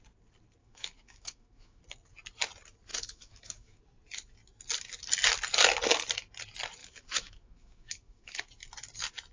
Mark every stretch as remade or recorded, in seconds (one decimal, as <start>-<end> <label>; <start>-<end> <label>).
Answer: 0.0-0.6 recorded; 0.6-1.8 remade; 1.8-2.9 recorded; 2.9-3.8 remade; 3.8-6.8 recorded; 6.8-8.5 remade; 8.5-9.3 recorded